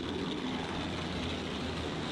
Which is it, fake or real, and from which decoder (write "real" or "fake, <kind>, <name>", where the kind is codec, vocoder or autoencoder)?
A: real